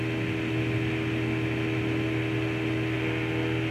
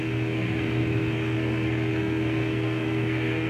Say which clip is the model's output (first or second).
second